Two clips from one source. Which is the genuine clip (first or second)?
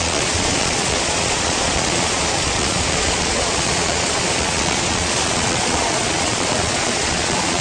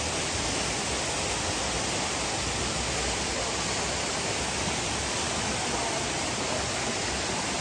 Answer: second